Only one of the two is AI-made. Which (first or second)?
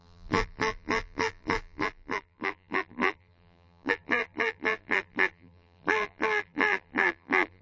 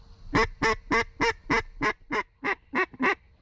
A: first